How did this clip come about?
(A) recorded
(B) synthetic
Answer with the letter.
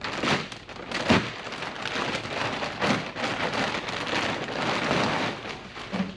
A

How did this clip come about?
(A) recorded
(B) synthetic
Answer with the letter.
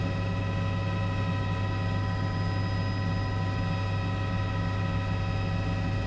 A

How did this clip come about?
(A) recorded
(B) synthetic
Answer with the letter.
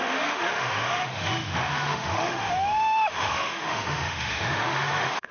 B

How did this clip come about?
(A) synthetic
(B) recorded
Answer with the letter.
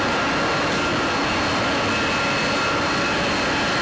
B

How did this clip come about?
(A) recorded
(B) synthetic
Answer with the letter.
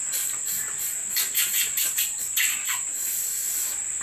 A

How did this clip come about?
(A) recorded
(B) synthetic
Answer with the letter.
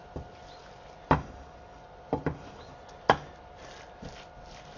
A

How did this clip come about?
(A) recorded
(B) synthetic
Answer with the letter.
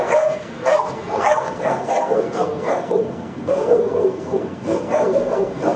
B